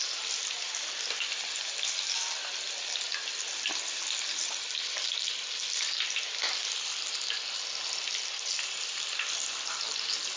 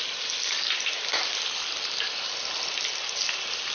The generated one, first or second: second